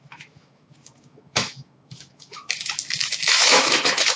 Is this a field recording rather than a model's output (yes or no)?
no